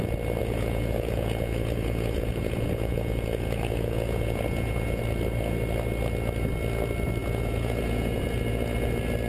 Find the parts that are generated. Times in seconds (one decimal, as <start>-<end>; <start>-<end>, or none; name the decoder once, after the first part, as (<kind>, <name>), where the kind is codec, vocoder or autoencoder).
0.4-5.0 (vocoder, Vocos); 7.2-8.2